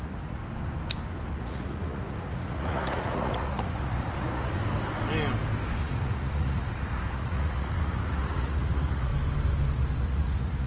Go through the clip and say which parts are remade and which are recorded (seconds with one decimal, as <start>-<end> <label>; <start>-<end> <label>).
0.0-0.4 remade; 0.4-1.3 recorded; 1.3-4.6 remade; 4.6-5.8 recorded; 5.8-9.1 remade; 9.1-10.0 recorded; 10.0-10.7 remade